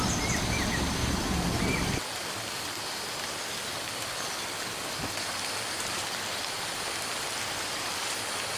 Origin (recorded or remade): recorded